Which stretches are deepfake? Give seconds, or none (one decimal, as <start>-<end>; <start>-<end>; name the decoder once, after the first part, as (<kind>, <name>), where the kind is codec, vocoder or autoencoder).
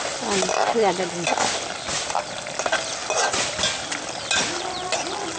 none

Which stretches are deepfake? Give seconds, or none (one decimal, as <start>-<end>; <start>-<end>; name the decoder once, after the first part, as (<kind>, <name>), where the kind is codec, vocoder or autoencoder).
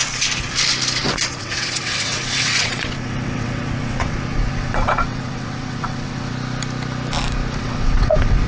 1.4-6.3 (vocoder, WaveNeXt); 7.6-8.5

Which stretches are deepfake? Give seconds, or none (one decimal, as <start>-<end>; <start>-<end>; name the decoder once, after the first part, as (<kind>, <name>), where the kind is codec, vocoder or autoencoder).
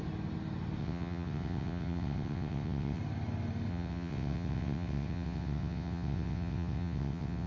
0.8-3.0 (vocoder, WaveNeXt); 3.7-7.5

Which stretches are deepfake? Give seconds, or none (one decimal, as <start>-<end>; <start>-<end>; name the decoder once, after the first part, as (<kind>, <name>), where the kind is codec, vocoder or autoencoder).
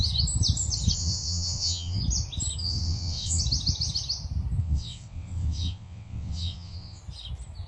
1.0-2.0 (vocoder, WaveNeXt); 2.6-3.4; 4.6-7.0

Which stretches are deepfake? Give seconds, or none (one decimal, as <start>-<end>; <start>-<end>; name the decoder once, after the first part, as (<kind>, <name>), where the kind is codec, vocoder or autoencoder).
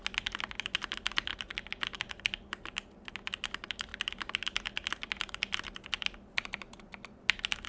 none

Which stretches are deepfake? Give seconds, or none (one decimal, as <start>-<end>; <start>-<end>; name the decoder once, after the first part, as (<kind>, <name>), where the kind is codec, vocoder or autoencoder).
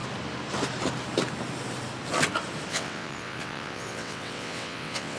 2.7-5.2 (vocoder, WaveNeXt)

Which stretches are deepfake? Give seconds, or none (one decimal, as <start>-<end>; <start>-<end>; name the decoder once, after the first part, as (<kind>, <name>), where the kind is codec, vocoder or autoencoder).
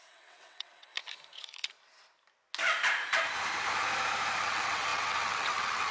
0.0-0.9 (vocoder, WaveNeXt); 4.4-5.9